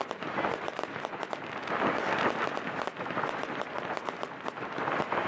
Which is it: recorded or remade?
recorded